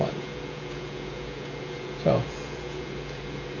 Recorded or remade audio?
remade